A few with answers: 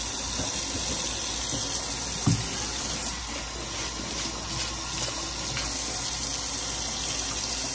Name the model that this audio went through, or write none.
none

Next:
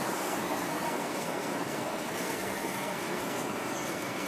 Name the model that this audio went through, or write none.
codec, SNAC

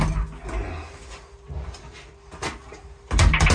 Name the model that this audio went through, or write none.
none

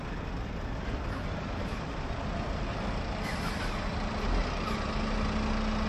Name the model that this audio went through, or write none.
none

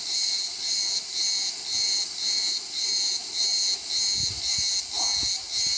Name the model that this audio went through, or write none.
none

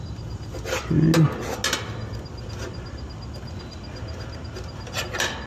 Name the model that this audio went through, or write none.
none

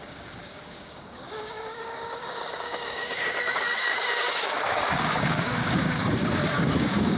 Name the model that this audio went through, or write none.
codec, DAC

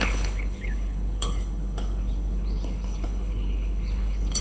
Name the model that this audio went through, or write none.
codec, HILCodec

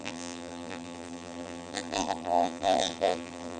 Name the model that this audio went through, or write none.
vocoder, BigVGAN v2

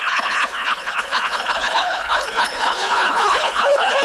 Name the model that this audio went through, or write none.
codec, HILCodec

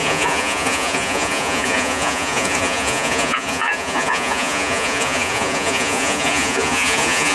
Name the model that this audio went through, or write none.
vocoder, Vocos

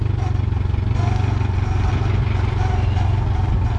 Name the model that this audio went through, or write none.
none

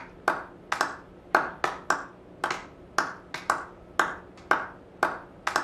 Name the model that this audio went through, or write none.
none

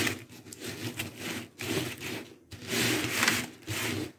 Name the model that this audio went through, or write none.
none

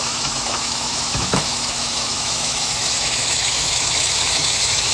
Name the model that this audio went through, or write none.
autoencoder, DAC-VAE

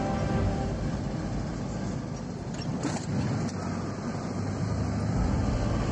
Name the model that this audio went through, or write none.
none